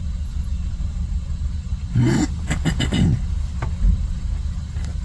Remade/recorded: recorded